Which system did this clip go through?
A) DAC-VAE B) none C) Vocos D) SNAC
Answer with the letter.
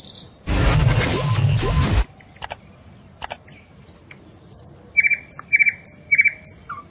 B